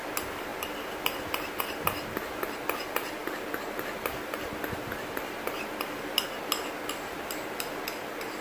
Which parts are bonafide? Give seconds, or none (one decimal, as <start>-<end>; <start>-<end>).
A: 0.0-8.4